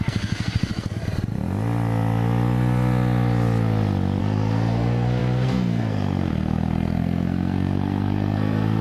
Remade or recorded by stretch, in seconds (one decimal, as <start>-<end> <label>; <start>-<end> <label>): 0.0-1.0 remade; 1.0-4.2 recorded; 4.2-8.8 remade